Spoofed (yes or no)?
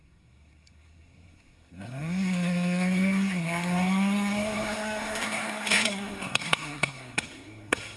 yes